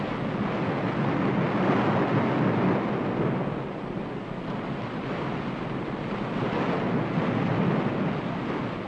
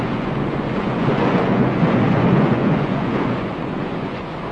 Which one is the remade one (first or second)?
second